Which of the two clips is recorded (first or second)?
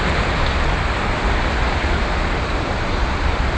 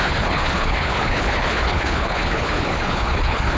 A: first